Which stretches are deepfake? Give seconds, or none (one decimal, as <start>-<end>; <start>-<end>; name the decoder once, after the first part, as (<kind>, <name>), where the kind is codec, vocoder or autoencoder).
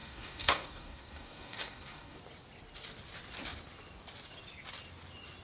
0.0-2.2 (codec, DAC)